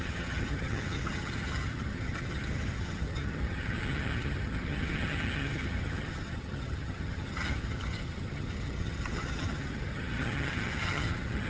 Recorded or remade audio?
remade